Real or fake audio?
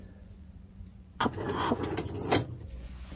fake